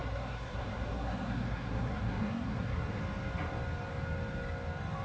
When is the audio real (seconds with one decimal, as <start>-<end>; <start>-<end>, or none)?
3.0-5.0